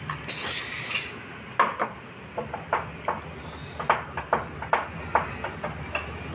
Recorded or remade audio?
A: recorded